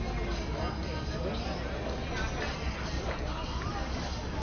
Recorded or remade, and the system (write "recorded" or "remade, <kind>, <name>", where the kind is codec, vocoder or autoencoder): recorded